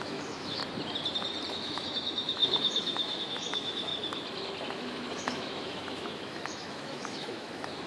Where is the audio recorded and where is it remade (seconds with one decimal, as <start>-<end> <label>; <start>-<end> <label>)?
0.0-0.6 remade; 0.6-1.5 recorded; 1.5-3.9 remade; 3.9-4.7 recorded; 4.7-7.9 remade

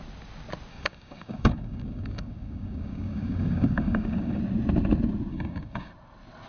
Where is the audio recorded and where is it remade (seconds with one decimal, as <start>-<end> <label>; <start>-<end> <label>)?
0.0-0.7 recorded; 0.7-4.4 remade; 4.4-5.3 recorded; 5.3-5.9 remade; 5.9-6.5 recorded

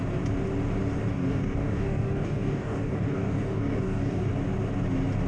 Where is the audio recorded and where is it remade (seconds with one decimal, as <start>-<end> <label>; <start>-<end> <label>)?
0.0-1.1 recorded; 1.1-4.3 remade; 4.3-5.3 recorded

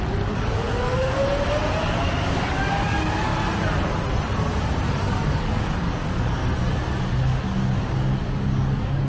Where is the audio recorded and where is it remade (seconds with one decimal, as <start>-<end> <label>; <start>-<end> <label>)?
0.0-1.2 remade; 1.2-1.8 recorded; 1.8-3.3 remade; 3.3-5.0 recorded; 5.0-6.4 remade; 6.4-7.0 recorded; 7.0-9.1 remade

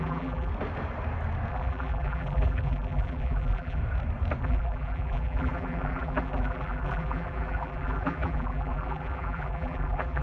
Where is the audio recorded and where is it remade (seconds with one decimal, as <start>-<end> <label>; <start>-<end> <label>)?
0.0-0.5 remade; 0.5-1.5 recorded; 1.5-3.8 remade; 3.8-4.4 recorded; 4.4-10.2 remade

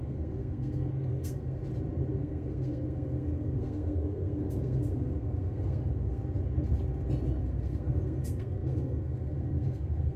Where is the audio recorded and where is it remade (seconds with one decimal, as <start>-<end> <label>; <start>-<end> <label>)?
0.0-1.6 remade; 1.6-2.2 recorded; 2.2-6.2 remade; 6.2-7.4 recorded; 7.4-10.2 remade

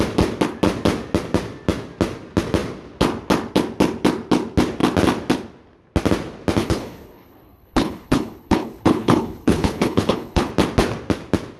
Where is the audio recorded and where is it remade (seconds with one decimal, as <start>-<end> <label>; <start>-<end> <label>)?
0.0-6.6 recorded; 6.6-10.5 remade; 10.5-11.6 recorded